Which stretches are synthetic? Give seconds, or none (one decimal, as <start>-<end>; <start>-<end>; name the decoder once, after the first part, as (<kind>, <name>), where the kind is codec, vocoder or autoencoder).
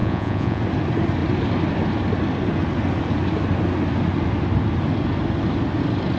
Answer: 0.0-0.6 (vocoder, Vocos)